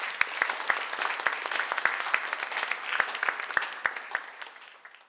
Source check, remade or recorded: recorded